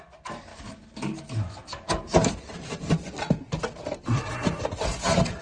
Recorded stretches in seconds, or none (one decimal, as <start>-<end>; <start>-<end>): 0.0-5.4